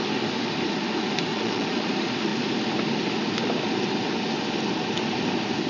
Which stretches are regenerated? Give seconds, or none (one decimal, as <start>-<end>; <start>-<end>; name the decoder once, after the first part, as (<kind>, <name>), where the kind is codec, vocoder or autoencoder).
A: 1.3-1.9 (vocoder, Vocos)